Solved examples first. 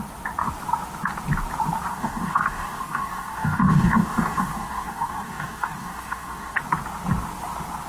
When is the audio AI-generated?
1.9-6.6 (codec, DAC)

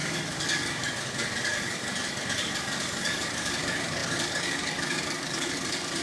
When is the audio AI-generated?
0.0-6.0 (codec, DAC)